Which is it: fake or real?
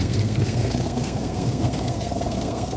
fake